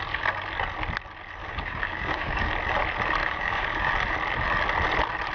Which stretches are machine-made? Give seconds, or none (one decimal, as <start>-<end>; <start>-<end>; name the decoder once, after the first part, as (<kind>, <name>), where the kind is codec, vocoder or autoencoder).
1.4-2.5 (codec, DAC); 3.2-3.9